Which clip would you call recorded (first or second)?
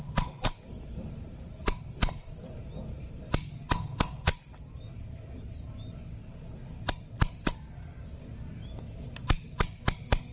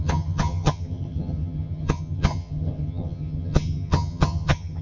first